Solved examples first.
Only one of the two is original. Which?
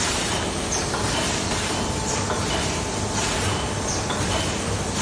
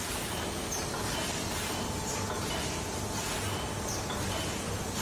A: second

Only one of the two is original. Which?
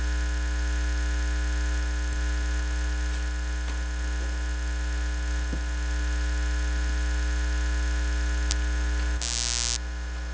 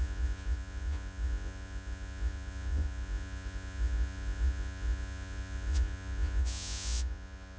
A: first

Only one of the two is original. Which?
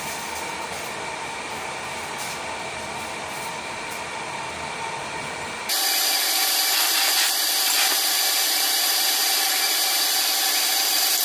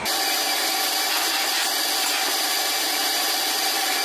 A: second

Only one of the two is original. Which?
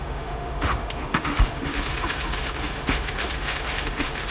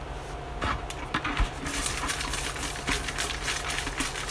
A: second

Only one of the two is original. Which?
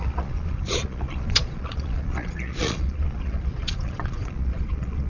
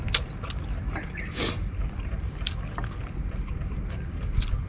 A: second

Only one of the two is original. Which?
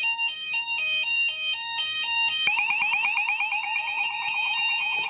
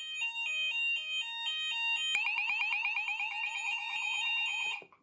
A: second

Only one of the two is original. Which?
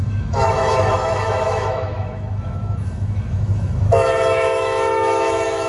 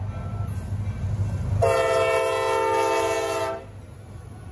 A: second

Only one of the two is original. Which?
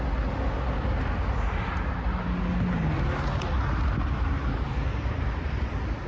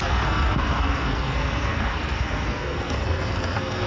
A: first